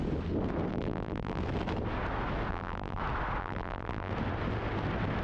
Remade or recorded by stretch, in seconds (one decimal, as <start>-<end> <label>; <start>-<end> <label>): 0.0-0.7 recorded; 0.7-1.4 remade; 1.4-2.5 recorded; 2.5-3.0 remade; 3.0-3.4 recorded; 3.4-4.1 remade; 4.1-5.2 recorded